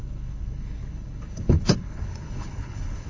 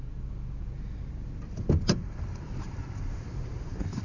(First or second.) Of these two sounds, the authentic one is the second